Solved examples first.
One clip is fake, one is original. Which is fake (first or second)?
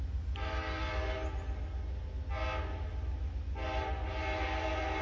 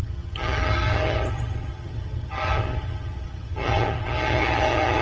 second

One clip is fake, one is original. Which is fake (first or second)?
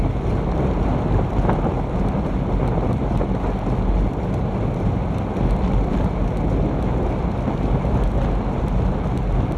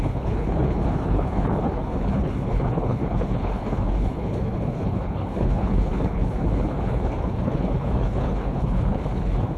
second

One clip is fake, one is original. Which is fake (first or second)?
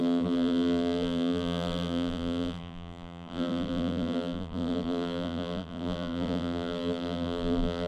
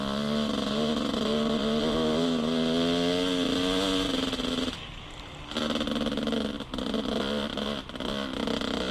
first